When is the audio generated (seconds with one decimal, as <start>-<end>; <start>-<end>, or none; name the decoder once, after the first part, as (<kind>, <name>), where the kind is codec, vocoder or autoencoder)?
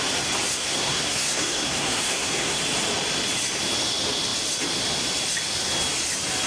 0.5-2.6 (codec, SNAC)